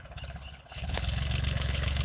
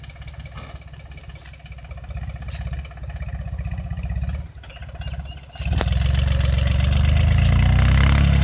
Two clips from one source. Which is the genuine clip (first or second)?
second